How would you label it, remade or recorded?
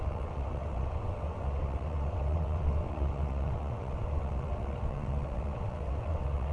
remade